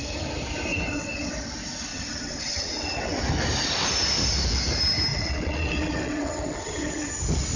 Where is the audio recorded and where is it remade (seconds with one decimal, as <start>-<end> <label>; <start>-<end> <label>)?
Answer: 0.0-0.7 recorded; 0.7-1.3 remade; 1.3-1.9 recorded; 1.9-3.2 remade; 3.2-5.1 recorded; 5.1-7.1 remade; 7.1-7.6 recorded